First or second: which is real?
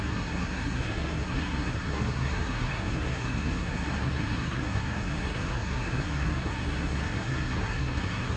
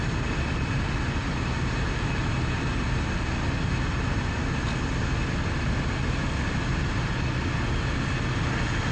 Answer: second